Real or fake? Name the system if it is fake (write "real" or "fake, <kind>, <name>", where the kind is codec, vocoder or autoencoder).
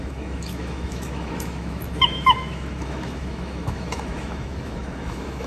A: fake, autoencoder, DAC-VAE